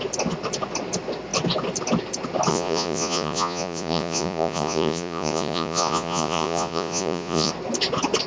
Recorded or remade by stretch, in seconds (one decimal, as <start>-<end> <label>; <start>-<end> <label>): 0.0-2.5 recorded; 2.5-7.5 remade; 7.5-8.3 recorded